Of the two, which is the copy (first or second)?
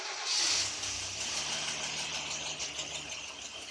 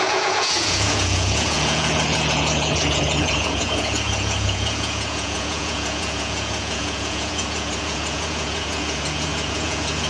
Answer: second